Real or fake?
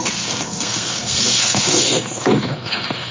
fake